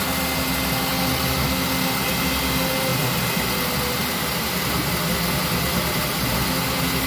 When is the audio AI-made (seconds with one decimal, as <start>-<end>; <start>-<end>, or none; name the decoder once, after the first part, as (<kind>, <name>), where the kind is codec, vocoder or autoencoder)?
none